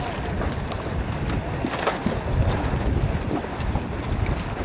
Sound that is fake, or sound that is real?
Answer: real